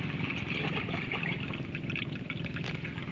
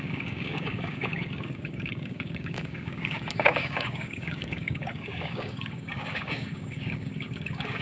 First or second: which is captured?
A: first